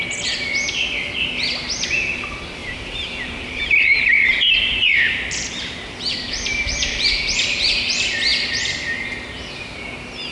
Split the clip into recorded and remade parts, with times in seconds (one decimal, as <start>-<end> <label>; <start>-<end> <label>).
0.0-2.6 recorded; 2.6-7.1 remade; 7.1-10.3 recorded